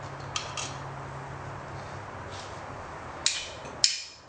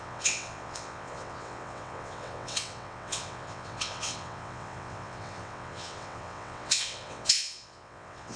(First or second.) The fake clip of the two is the second